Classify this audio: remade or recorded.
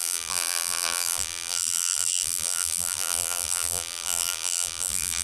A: remade